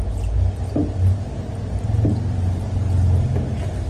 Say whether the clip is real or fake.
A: real